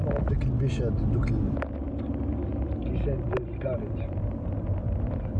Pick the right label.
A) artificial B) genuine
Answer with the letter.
B